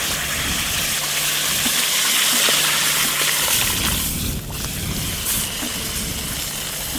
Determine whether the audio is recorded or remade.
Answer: recorded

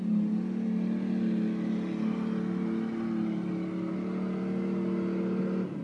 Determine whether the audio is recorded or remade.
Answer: recorded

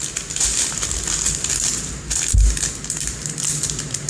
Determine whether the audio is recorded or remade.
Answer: recorded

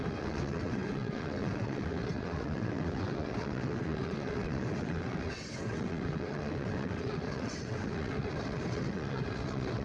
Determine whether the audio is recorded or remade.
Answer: remade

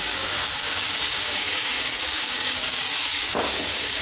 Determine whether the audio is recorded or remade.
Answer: remade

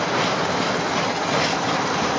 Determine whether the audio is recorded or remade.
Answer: recorded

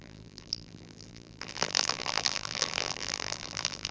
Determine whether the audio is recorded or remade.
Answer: remade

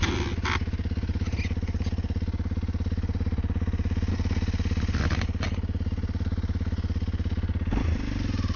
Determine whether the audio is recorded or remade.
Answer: recorded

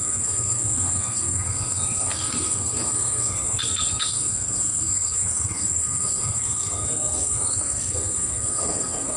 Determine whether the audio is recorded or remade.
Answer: remade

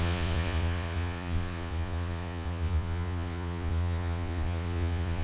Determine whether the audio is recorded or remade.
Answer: remade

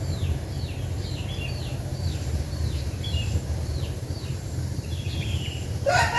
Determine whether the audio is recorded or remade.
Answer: remade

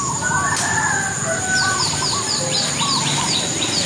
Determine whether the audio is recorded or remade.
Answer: recorded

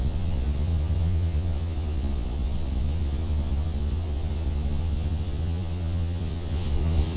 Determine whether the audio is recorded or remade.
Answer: remade